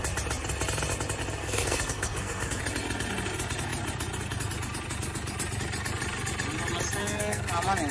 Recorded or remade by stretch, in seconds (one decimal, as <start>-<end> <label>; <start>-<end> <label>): 0.0-1.4 recorded; 1.4-2.6 remade; 2.6-7.0 recorded; 7.0-7.5 remade; 7.5-7.9 recorded